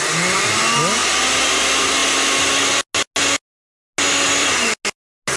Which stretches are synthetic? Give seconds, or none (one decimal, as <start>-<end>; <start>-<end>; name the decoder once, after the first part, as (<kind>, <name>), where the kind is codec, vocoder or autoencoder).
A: none

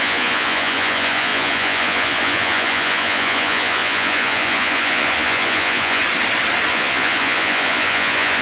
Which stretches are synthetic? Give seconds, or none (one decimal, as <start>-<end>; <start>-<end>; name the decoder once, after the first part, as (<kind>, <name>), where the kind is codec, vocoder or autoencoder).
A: 0.0-6.0 (vocoder, Vocos); 6.7-8.4

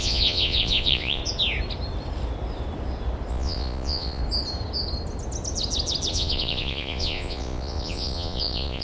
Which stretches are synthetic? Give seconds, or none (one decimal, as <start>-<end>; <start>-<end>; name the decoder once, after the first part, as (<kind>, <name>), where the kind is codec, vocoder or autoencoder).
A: 0.0-1.2 (vocoder, Vocos); 3.3-4.2; 6.1-8.8

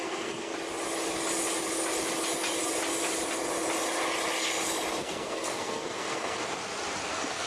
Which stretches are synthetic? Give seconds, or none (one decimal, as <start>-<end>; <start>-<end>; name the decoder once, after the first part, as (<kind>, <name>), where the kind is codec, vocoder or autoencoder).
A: 0.0-0.5 (codec, SNAC); 5.0-6.4; 7.1-7.5

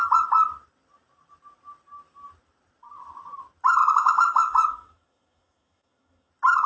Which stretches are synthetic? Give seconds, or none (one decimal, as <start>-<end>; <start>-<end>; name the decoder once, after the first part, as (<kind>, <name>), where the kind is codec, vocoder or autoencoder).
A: 3.8-6.3 (autoencoder, DAC-VAE)

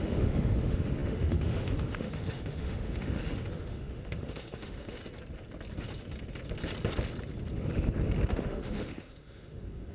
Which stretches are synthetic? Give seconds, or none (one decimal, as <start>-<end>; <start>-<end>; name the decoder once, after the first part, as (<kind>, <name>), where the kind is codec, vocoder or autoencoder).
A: 0.0-5.0 (autoencoder, DAC-VAE); 8.3-9.9